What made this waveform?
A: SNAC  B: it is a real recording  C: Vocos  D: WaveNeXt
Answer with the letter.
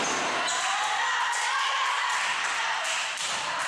B